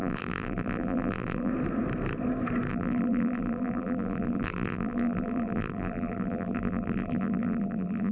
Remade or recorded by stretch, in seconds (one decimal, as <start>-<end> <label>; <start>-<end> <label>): 0.0-1.5 remade; 1.5-2.7 recorded; 2.7-8.1 remade